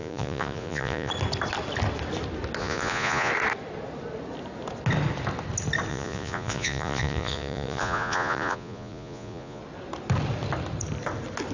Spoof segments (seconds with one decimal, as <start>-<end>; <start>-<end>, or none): 0.0-1.1; 2.6-3.3; 5.9-9.6